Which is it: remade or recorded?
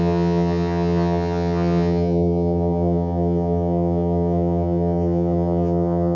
remade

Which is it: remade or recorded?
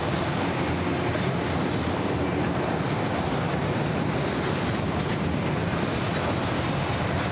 recorded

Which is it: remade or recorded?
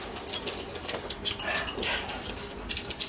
recorded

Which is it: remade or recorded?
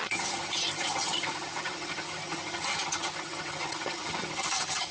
remade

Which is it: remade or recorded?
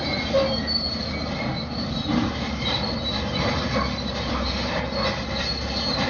recorded